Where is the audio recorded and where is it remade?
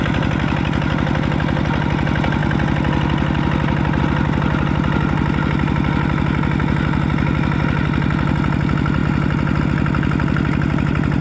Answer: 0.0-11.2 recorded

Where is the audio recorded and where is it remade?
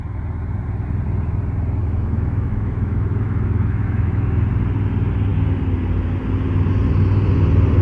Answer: 0.0-1.8 recorded; 1.8-4.5 remade; 4.5-7.8 recorded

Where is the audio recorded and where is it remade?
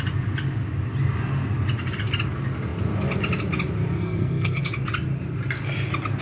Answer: 0.0-4.0 recorded; 4.0-4.6 remade; 4.6-6.2 recorded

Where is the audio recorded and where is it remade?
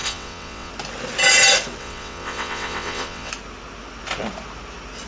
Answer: 0.0-0.7 remade; 0.7-1.8 recorded; 1.8-3.3 remade; 3.3-5.1 recorded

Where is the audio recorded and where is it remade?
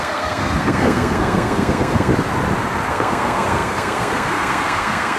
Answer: 0.0-2.1 remade; 2.1-2.9 recorded; 2.9-5.2 remade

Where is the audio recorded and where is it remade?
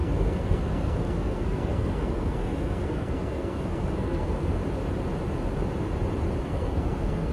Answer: 0.0-4.6 remade; 4.6-6.4 recorded; 6.4-7.3 remade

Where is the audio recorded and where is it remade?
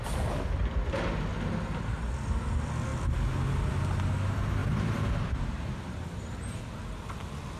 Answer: 0.0-1.3 recorded; 1.3-2.0 remade; 2.0-4.6 recorded; 4.6-6.6 remade; 6.6-7.6 recorded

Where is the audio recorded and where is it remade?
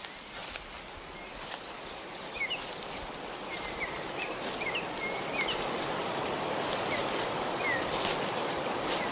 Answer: 0.0-9.1 recorded